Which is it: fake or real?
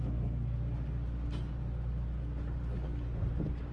real